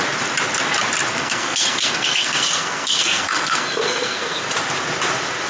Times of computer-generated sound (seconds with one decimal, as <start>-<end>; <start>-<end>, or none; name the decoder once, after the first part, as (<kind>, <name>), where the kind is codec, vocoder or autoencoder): 1.1-4.4 (codec, SNAC)

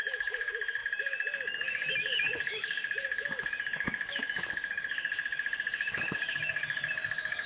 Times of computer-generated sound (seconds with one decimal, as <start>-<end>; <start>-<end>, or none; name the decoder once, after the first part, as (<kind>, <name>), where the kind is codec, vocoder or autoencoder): 0.0-7.5 (autoencoder, DAC-VAE)

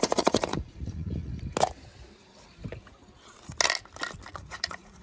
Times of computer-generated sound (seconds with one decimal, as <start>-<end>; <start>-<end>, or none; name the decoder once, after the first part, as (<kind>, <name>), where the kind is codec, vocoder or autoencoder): 0.0-1.3 (vocoder, Vocos); 4.3-5.0

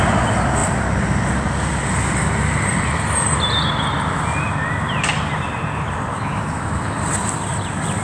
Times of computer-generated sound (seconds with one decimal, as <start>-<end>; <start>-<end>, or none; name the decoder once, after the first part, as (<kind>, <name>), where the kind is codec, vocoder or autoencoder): 6.1-7.0 (autoencoder, DAC-VAE)

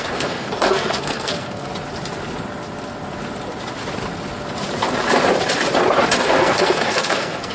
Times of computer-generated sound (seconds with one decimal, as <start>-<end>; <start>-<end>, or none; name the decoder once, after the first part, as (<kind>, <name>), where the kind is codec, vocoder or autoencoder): 0.0-1.7 (codec, SNAC); 6.2-7.5

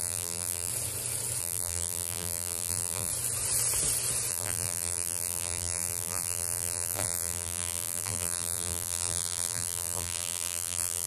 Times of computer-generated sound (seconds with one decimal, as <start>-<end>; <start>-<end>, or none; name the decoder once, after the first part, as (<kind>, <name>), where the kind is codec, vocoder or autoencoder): 0.0-0.7 (vocoder, BigVGAN v2); 1.4-3.1; 4.3-11.1